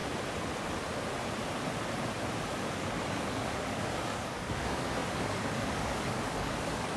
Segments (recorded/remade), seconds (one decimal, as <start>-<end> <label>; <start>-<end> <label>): 0.0-2.5 recorded; 2.5-7.0 remade